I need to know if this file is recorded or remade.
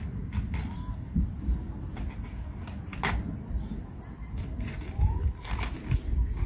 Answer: recorded